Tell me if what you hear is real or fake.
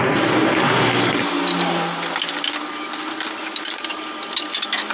real